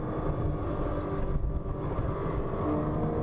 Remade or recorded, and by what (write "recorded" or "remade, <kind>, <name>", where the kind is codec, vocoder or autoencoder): recorded